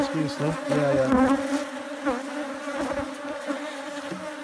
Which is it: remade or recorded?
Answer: recorded